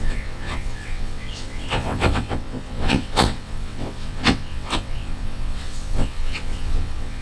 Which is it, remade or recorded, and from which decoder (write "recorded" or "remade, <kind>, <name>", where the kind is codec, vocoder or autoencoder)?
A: remade, vocoder, WaveNeXt